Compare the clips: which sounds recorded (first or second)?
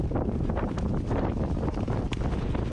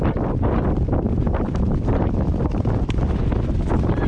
first